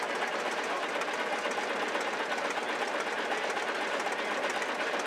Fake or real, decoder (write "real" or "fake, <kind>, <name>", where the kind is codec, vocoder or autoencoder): real